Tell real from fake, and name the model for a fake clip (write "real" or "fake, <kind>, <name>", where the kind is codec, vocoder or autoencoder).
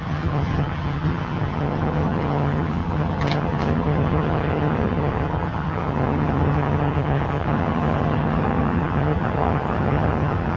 fake, vocoder, HiFi-GAN